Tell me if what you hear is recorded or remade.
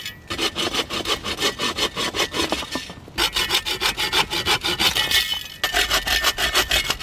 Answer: recorded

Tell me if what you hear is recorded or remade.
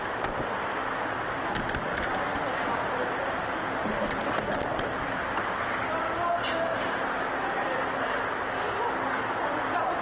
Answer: recorded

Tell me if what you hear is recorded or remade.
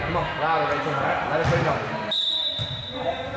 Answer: recorded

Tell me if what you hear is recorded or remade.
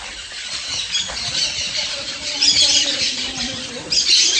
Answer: recorded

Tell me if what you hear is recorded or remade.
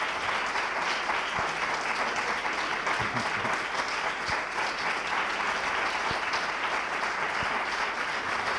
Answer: recorded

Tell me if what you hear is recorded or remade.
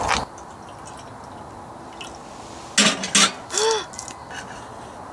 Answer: recorded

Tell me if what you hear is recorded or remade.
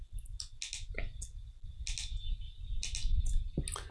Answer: recorded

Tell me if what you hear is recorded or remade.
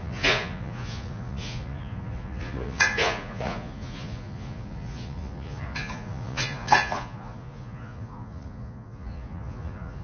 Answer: remade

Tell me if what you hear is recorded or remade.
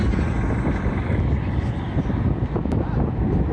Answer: recorded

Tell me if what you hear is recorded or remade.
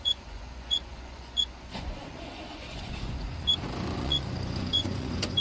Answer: remade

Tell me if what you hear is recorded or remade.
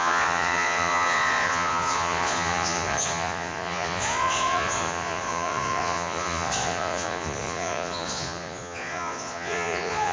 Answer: remade